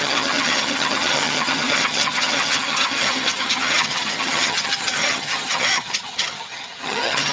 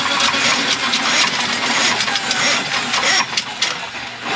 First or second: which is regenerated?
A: first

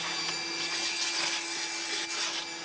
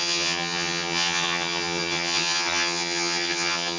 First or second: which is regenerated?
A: second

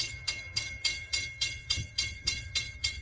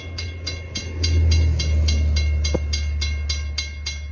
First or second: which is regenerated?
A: first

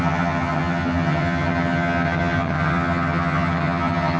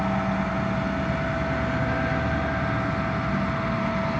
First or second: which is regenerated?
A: first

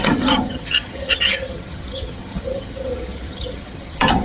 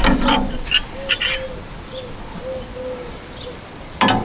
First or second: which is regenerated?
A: first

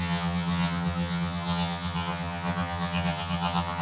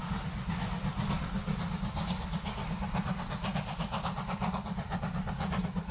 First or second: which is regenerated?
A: first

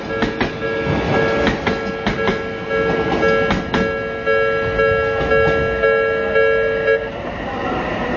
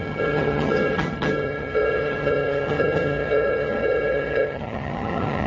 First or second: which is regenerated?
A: second